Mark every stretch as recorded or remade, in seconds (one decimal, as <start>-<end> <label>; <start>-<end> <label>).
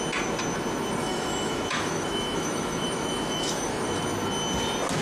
0.0-1.0 recorded; 1.0-4.0 remade; 4.0-5.0 recorded